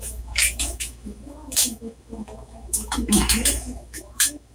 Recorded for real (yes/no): no